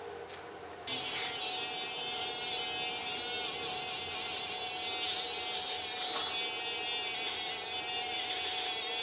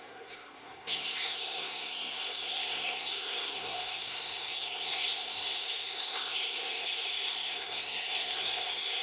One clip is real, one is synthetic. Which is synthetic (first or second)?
second